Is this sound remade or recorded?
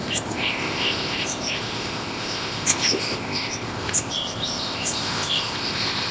remade